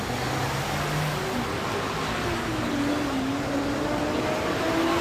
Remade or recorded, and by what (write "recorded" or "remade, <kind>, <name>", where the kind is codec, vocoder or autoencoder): recorded